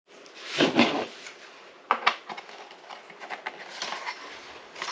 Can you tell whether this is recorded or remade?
recorded